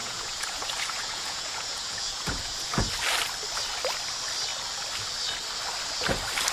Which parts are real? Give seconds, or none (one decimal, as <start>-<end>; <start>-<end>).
2.9-6.5